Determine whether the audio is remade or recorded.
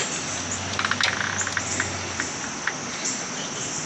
recorded